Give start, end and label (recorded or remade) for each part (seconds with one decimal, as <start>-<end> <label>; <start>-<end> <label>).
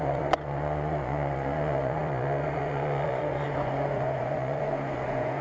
0.0-5.4 remade